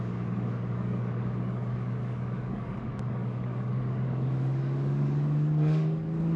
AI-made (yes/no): yes